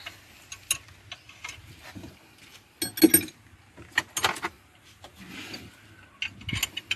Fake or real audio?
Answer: real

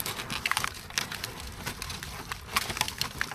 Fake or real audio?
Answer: real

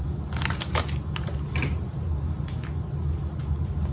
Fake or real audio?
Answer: real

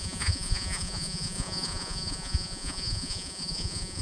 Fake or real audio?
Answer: fake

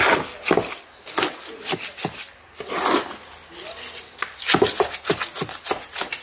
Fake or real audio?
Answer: real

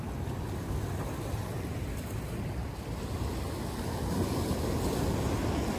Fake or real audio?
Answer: real